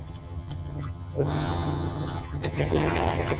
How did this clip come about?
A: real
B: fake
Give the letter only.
B